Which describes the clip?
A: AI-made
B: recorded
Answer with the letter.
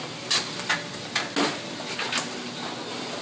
B